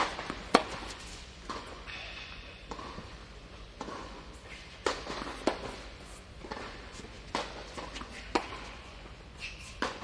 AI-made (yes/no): yes